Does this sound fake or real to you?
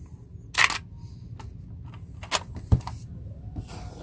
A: real